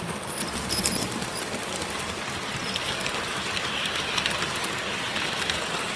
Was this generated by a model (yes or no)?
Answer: yes